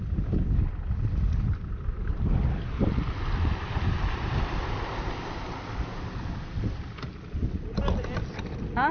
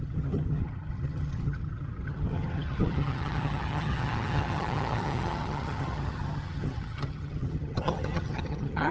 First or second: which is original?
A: first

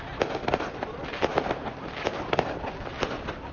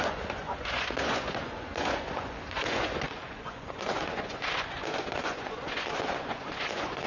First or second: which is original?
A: first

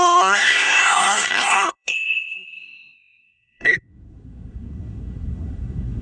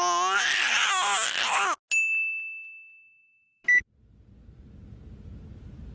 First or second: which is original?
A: second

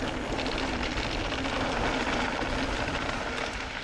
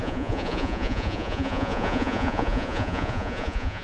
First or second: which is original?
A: first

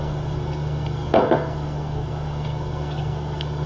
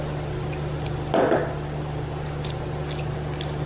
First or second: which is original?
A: second